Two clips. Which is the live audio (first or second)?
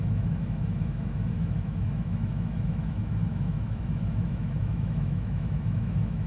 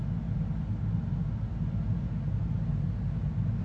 second